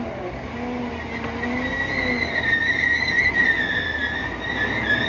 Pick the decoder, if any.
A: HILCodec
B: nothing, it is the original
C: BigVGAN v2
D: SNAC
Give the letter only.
B